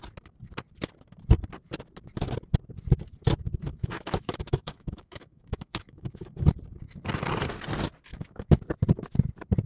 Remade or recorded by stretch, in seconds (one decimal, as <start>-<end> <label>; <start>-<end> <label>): 0.0-3.7 recorded; 3.7-6.3 remade; 6.3-8.1 recorded; 8.1-8.6 remade; 8.6-9.7 recorded